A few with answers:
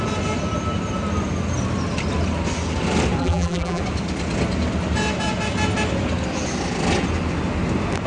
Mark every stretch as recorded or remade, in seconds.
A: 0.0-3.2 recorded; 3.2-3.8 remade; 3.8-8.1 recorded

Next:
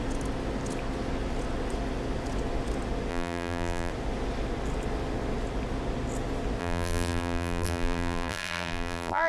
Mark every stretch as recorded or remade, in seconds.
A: 0.0-3.1 recorded; 3.1-3.9 remade; 3.9-6.6 recorded; 6.6-9.3 remade

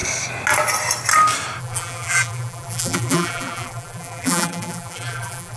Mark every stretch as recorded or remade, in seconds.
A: 0.0-1.6 recorded; 1.6-5.6 remade